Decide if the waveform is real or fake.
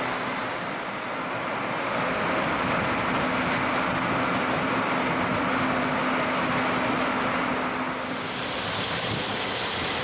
real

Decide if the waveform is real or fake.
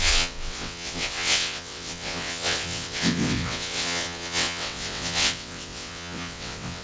fake